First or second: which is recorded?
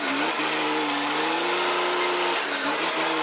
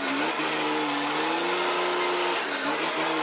second